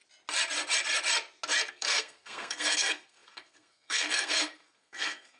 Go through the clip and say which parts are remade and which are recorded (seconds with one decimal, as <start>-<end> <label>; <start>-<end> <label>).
0.0-1.7 recorded; 1.7-5.4 remade